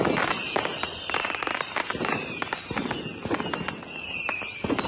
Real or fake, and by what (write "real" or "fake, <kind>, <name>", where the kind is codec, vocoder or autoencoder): real